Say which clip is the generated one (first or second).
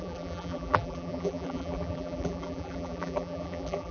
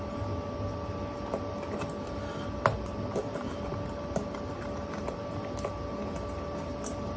first